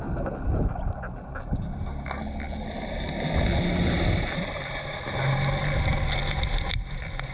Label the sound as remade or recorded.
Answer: recorded